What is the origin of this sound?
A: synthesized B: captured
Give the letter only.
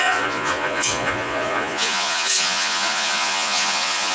A